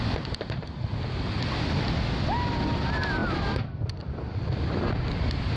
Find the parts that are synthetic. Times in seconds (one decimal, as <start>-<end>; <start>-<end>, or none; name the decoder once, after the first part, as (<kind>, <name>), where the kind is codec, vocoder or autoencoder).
none